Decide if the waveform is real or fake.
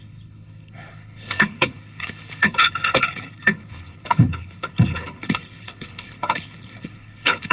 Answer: fake